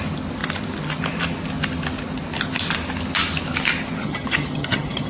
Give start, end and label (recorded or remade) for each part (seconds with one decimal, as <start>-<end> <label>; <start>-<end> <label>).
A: 0.0-4.0 recorded; 4.0-5.1 remade